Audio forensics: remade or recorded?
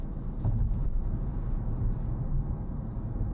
recorded